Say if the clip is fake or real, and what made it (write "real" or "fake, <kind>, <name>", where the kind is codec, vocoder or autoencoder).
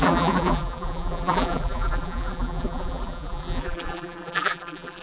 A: fake, vocoder, BigVGAN v2